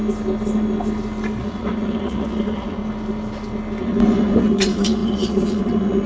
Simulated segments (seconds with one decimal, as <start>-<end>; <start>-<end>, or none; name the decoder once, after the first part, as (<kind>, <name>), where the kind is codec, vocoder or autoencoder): 1.4-2.8 (vocoder, Vocos); 3.8-6.1

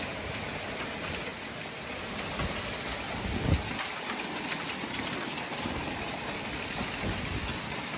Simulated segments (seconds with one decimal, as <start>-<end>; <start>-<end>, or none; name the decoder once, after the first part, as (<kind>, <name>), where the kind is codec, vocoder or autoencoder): none

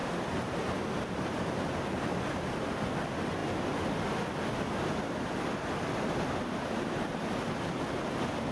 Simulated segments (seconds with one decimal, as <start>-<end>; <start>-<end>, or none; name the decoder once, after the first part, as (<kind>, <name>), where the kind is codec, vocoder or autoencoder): none

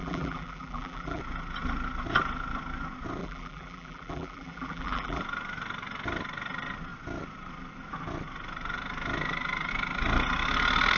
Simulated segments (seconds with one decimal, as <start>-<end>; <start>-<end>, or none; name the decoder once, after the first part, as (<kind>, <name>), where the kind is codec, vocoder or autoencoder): 0.0-1.2 (vocoder, BigVGAN v2); 3.2-5.2

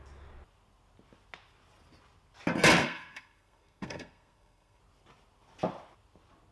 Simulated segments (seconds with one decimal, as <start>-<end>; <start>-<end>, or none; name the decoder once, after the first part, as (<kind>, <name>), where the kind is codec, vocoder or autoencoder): 2.8-4.8 (codec, SNAC)

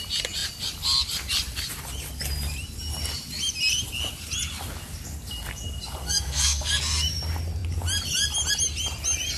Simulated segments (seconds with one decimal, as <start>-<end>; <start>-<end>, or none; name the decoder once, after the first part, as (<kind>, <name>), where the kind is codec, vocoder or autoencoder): 6.0-6.7 (codec, SNAC)

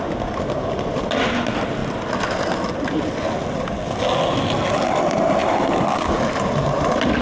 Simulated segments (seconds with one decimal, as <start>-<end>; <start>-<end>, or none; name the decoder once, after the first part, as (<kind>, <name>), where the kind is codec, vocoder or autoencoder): none